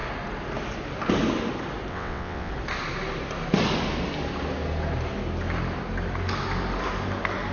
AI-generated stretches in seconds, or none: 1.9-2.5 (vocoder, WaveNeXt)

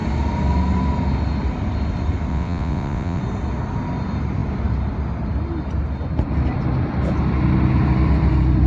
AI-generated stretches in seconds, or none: 2.3-3.2 (vocoder, WaveNeXt)

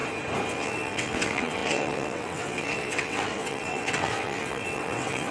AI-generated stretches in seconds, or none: 0.5-5.3 (vocoder, WaveNeXt)

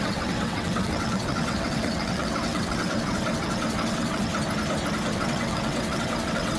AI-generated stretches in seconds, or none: 0.0-4.3 (vocoder, WaveNeXt); 5.1-6.6